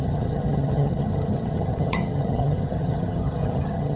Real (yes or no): no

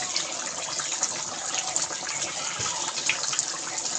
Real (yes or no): yes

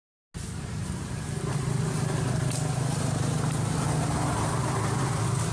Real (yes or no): yes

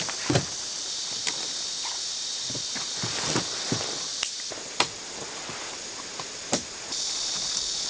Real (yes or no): yes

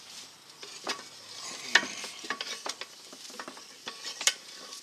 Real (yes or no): yes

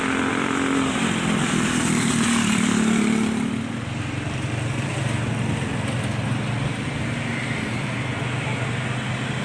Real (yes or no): yes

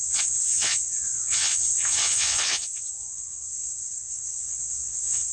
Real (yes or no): no